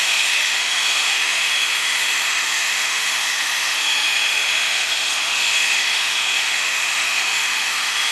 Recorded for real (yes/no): no